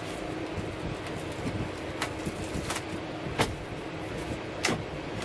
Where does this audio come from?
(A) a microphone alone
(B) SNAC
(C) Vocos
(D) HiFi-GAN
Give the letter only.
A